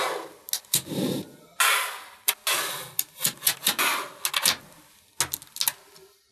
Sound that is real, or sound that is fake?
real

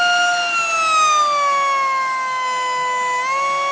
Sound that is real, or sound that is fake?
real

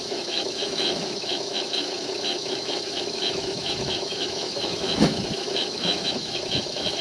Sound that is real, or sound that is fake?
fake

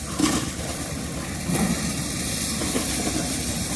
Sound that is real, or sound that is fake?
real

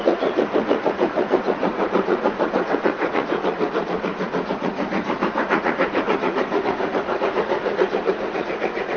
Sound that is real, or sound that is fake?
fake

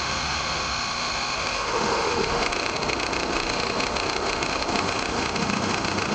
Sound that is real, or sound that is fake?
fake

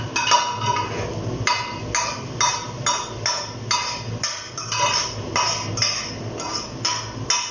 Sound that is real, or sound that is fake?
real